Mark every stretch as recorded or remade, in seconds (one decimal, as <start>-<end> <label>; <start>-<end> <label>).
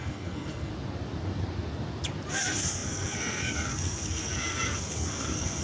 0.0-0.7 remade; 0.7-2.3 recorded; 2.3-5.6 remade